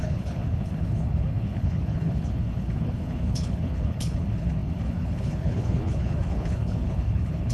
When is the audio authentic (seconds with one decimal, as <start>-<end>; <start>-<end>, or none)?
none

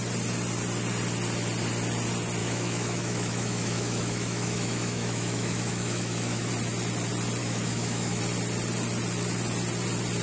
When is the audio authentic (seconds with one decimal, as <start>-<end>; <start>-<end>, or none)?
0.0-2.4; 6.5-7.4; 8.2-10.2